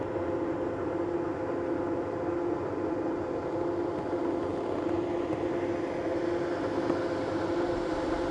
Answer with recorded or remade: recorded